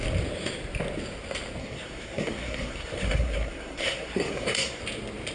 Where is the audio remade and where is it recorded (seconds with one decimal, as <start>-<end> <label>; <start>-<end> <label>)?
0.0-1.6 recorded; 1.6-4.8 remade; 4.8-5.3 recorded